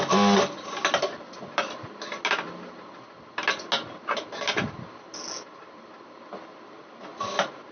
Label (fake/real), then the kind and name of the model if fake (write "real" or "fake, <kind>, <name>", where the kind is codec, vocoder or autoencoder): real